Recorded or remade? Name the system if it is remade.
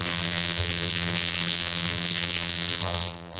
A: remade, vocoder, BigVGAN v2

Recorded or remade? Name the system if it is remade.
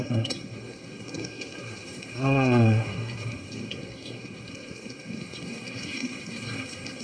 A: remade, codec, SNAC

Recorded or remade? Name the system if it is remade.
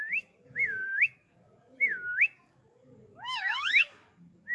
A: remade, codec, DAC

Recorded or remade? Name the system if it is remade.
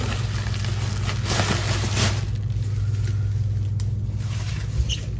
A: recorded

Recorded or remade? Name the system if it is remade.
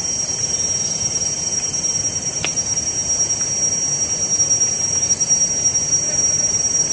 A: recorded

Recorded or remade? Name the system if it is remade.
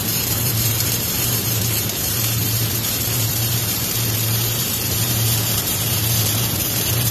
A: remade, vocoder, BigVGAN v2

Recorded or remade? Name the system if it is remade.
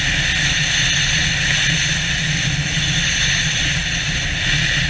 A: recorded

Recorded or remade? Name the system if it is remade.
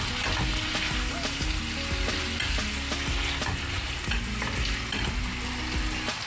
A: recorded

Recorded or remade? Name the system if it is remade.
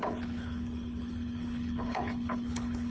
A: remade, codec, HILCodec